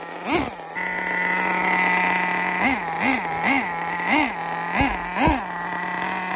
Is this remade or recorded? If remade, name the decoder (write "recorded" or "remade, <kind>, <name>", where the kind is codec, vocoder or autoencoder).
recorded